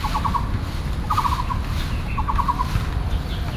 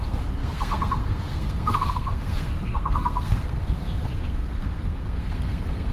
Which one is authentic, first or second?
first